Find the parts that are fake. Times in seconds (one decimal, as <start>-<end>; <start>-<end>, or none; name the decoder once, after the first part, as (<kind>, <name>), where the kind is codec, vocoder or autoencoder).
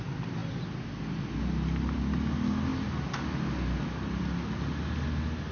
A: none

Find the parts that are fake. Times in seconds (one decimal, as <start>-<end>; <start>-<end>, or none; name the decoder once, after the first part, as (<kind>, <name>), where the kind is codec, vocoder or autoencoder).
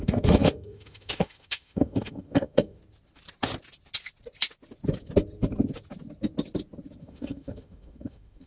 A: 0.0-2.8 (autoencoder, DAC-VAE); 7.0-8.5